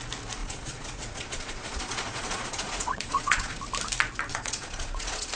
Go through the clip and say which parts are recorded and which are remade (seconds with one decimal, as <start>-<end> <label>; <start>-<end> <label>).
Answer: 0.0-0.4 recorded; 0.4-3.6 remade; 3.6-4.3 recorded; 4.3-5.3 remade